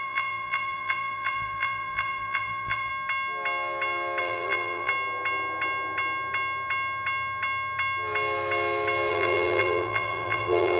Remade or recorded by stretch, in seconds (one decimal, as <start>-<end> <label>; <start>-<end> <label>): 0.0-2.9 remade; 2.9-4.2 recorded; 4.2-4.9 remade; 4.9-9.1 recorded; 9.1-10.8 remade